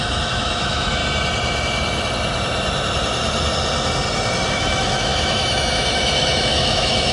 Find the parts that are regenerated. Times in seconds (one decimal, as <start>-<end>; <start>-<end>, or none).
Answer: 0.0-1.0; 4.5-7.1